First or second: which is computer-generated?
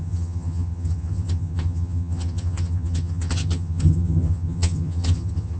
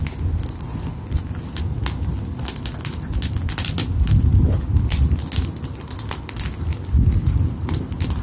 first